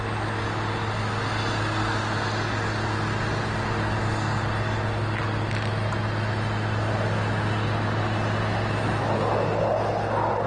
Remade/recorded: recorded